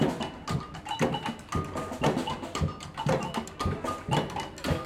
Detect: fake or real real